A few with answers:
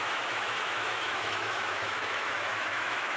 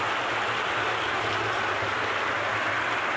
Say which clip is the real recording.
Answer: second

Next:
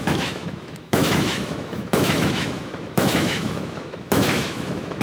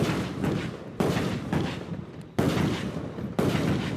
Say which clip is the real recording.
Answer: second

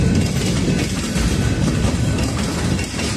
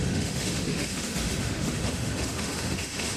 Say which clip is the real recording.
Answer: first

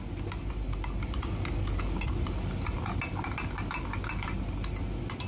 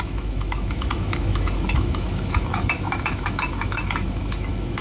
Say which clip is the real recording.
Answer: first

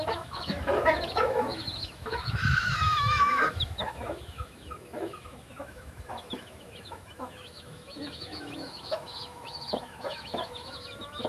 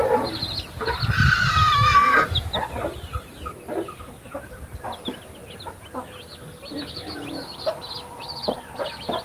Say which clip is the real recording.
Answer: second